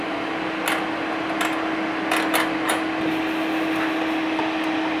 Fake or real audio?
real